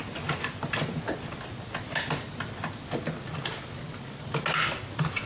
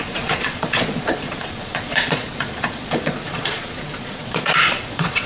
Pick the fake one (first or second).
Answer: second